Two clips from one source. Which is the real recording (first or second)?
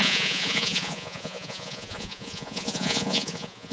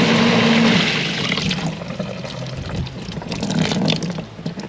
second